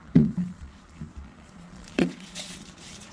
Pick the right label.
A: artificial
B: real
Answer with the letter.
A